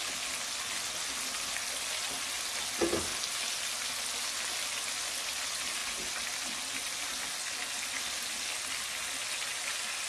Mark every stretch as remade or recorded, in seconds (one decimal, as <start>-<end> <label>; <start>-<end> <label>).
0.0-10.1 recorded